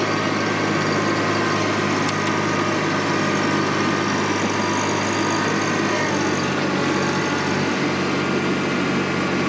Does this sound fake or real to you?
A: real